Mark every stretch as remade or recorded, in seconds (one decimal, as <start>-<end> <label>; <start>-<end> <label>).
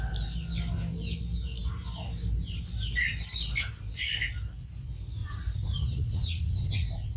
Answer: 0.0-5.2 recorded; 5.2-7.2 remade